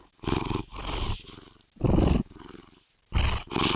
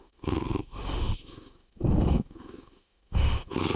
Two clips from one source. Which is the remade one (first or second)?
second